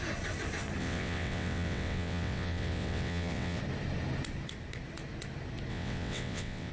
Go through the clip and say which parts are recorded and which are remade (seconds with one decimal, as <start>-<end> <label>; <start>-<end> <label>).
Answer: 0.0-0.8 recorded; 0.8-3.6 remade; 3.6-5.7 recorded; 5.7-6.7 remade